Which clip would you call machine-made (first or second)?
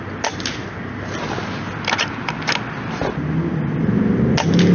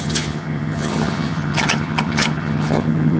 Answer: second